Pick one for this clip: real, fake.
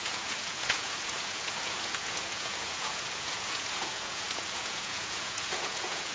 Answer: fake